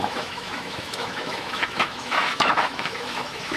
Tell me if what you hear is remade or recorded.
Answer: remade